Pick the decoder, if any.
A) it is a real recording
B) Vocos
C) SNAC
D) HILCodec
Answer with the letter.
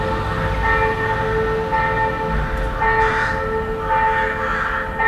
A